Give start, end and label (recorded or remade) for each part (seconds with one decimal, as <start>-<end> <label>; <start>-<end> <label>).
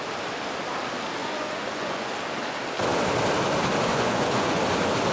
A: 0.0-1.2 recorded; 1.2-2.1 remade; 2.1-3.9 recorded; 3.9-4.6 remade; 4.6-5.1 recorded